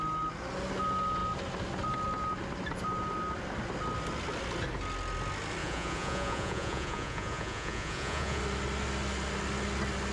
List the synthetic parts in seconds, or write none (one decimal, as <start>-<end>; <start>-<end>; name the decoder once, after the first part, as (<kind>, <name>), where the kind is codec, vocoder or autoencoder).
5.6-8.4 (vocoder, Vocos)